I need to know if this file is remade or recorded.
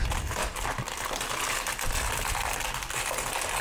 recorded